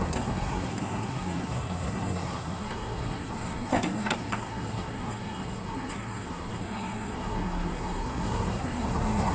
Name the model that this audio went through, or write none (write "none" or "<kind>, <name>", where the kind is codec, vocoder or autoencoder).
codec, SNAC